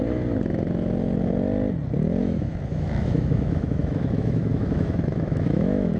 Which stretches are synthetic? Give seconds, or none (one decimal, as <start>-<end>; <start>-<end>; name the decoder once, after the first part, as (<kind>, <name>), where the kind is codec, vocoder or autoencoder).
2.2-6.0 (autoencoder, DAC-VAE)